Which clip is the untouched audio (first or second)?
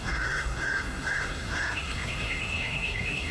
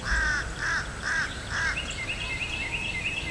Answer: second